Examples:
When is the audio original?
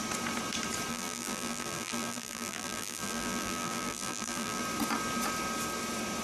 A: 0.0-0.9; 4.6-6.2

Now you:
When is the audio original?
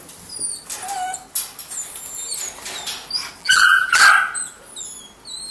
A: 0.0-3.4; 4.0-5.5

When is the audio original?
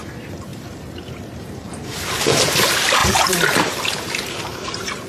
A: none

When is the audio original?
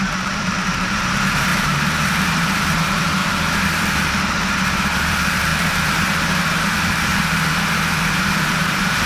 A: none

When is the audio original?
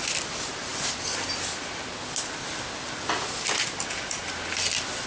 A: 0.0-5.1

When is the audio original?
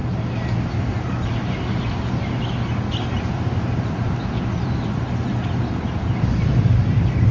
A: 0.0-3.0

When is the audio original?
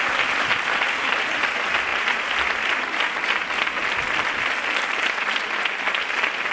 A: 1.9-4.2